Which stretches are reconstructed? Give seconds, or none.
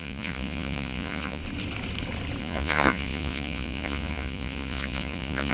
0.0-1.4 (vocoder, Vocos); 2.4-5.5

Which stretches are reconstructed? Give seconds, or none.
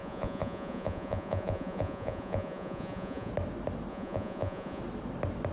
0.0-3.3 (vocoder, Vocos); 3.9-4.8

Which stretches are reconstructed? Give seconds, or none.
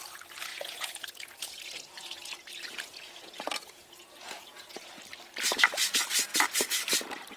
0.5-4.9 (vocoder, Vocos)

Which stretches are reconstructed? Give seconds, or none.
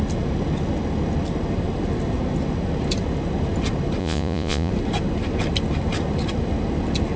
4.0-4.7 (vocoder, Vocos)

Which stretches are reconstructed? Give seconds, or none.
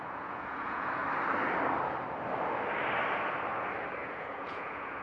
0.0-1.0 (vocoder, Vocos); 4.0-5.0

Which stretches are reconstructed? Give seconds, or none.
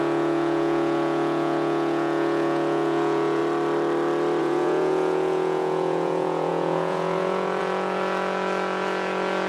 0.0-3.4 (vocoder, Vocos); 4.4-9.5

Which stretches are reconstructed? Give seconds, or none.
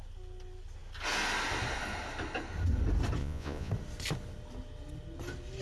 3.2-3.7 (vocoder, Vocos)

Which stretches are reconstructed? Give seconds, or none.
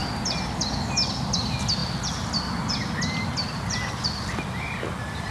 none